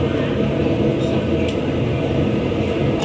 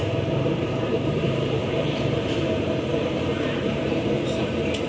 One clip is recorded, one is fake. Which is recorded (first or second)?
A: first